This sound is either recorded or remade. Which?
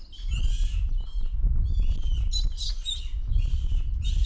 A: recorded